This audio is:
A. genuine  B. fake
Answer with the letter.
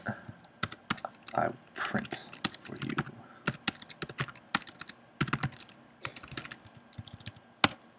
A